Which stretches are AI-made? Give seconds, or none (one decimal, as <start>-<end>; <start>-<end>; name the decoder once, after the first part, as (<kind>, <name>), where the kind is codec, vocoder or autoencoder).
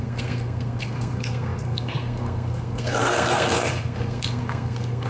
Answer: 0.0-5.1 (codec, SNAC)